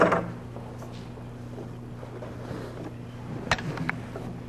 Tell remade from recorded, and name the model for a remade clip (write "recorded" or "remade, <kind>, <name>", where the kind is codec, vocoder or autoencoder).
recorded